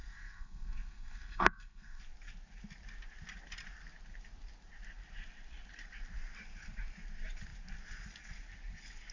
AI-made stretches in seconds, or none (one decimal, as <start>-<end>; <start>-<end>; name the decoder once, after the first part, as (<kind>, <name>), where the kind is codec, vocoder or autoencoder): 0.0-2.0 (codec, SNAC)